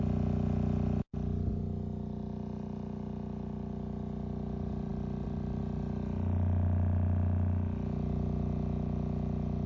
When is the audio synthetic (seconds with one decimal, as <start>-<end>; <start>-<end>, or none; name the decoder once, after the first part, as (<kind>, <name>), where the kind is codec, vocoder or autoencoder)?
none